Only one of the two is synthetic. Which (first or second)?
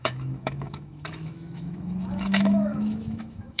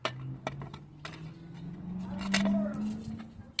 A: first